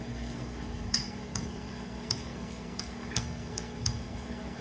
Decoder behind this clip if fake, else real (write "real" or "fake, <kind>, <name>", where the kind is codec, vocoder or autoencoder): fake, codec, SNAC